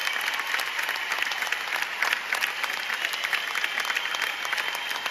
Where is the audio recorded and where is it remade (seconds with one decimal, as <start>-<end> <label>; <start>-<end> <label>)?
0.0-5.1 recorded